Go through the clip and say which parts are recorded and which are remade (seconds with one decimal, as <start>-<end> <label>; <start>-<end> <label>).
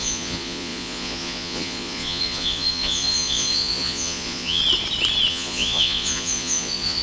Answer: 0.0-4.6 remade; 4.6-5.3 recorded; 5.3-7.0 remade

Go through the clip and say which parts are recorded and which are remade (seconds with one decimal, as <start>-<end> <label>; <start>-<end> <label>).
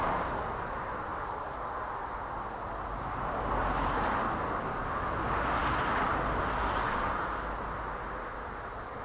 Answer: 0.0-9.0 recorded